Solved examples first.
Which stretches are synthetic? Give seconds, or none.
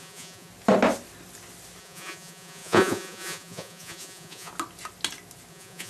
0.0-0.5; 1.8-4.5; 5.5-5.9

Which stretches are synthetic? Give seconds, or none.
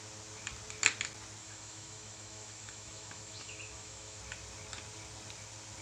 1.4-4.2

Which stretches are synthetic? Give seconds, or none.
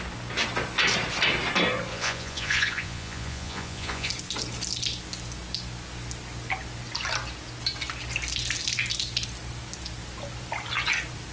1.9-4.1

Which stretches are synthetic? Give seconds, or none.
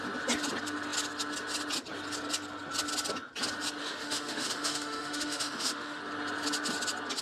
3.8-6.0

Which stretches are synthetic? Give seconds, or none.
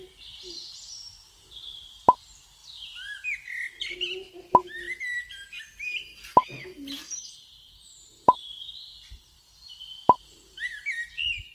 0.0-2.6; 3.9-11.5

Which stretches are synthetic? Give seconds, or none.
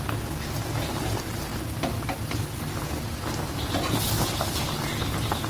none